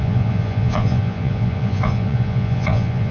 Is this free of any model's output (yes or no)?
no